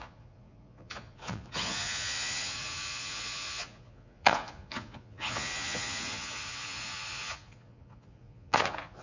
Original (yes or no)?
no